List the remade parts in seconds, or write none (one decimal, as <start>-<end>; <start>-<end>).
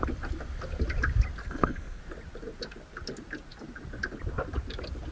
1.4-2.0